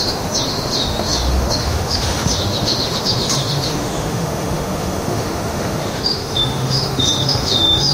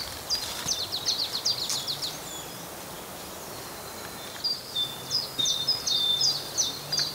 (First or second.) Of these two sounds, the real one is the second